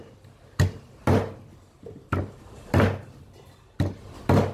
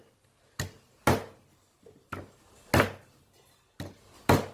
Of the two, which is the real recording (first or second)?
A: second